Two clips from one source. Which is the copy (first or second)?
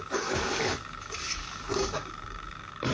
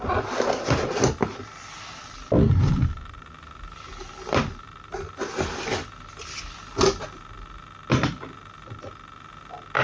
first